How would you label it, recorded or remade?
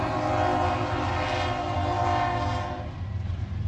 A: recorded